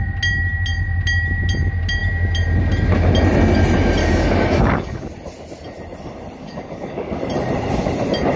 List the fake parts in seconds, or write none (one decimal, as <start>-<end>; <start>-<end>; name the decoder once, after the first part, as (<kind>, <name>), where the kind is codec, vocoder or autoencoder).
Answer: 4.0-5.1 (codec, DAC); 6.4-7.2